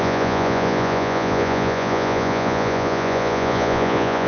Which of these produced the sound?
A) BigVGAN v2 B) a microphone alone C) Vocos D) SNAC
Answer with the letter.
C